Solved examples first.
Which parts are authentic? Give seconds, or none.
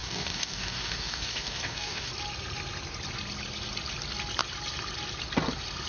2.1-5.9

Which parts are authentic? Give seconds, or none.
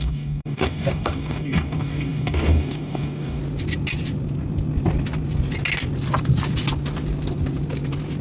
3.4-8.2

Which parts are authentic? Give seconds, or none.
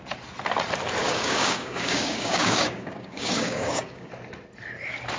0.0-1.0; 4.1-5.2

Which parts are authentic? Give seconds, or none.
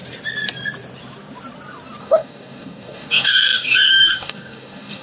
0.0-2.0